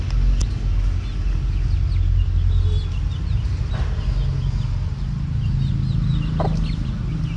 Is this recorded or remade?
recorded